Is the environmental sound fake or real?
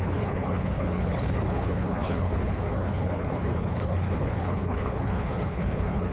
fake